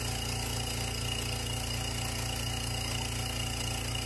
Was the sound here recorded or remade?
recorded